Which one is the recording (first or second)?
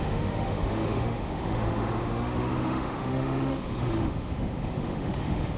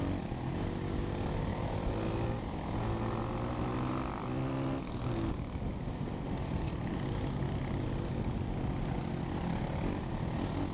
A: second